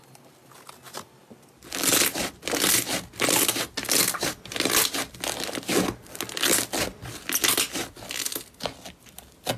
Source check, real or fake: real